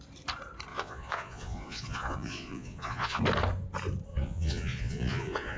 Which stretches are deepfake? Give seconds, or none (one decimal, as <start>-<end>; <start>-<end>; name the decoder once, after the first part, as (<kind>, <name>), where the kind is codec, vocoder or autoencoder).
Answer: 0.7-3.2 (vocoder, Vocos); 4.1-5.6